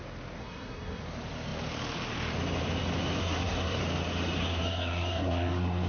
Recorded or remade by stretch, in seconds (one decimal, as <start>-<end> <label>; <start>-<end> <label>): 0.0-0.4 recorded; 0.4-1.0 remade; 1.0-3.2 recorded; 3.2-3.8 remade; 3.8-4.4 recorded; 4.4-5.9 remade